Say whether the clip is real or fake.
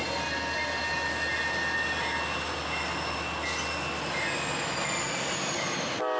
real